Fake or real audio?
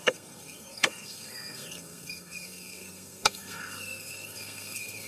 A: fake